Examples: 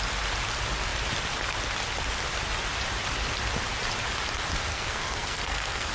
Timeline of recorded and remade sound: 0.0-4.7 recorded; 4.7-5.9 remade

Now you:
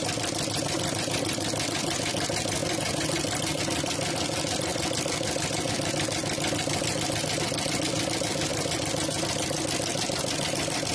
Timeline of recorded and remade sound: 0.0-10.9 recorded

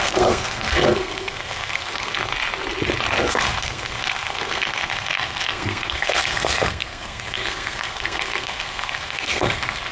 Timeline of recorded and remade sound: 0.0-2.3 remade; 2.3-3.3 recorded; 3.3-9.9 remade